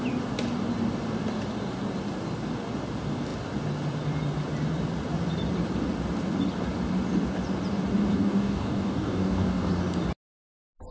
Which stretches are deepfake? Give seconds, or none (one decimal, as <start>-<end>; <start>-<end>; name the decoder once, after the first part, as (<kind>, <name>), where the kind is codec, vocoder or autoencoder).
8.1-9.7 (codec, DAC)